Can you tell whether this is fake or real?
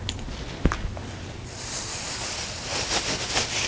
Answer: real